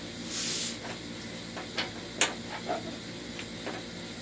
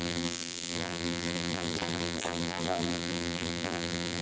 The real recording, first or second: first